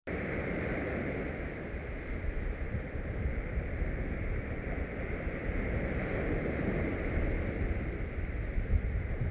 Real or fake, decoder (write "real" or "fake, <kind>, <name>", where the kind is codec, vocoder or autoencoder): real